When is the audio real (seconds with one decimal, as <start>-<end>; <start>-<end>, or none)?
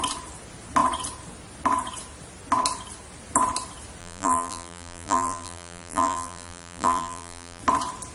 0.0-4.0; 7.6-8.1